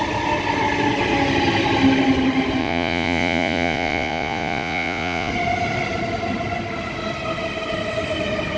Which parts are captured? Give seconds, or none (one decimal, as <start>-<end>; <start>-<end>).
0.0-2.6; 5.3-8.6